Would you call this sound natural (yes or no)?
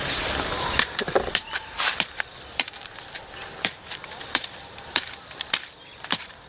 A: no